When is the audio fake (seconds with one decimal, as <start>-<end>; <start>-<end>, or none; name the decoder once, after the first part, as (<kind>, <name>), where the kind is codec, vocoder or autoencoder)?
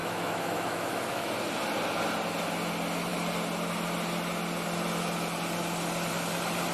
0.0-1.3 (autoencoder, DAC-VAE)